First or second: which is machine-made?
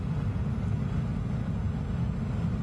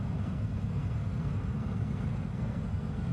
second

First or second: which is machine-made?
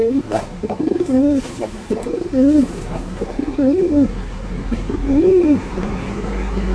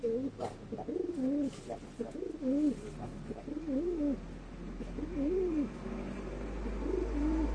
first